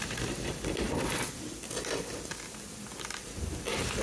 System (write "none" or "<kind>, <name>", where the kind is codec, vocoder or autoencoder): none